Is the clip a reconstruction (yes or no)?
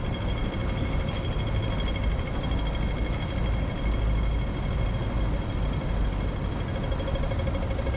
no